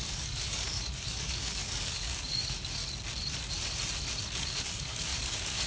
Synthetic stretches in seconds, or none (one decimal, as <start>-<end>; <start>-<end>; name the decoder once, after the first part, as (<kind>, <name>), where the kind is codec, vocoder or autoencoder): 0.0-2.8 (codec, DAC); 4.4-5.7